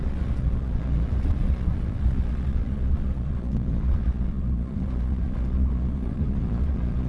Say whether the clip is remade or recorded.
remade